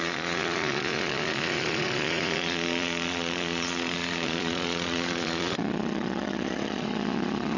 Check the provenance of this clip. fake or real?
fake